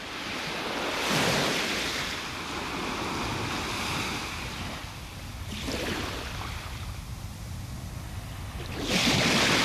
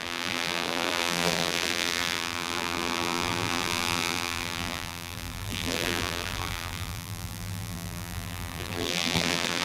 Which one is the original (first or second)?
first